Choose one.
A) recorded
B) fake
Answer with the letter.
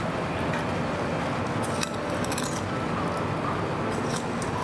A